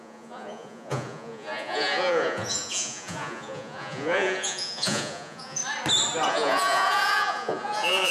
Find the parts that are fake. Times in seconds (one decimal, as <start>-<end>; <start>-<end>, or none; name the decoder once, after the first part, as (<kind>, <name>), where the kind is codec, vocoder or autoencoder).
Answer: 0.0-5.6 (vocoder, Vocos); 6.3-8.1